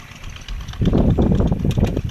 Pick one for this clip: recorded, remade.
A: recorded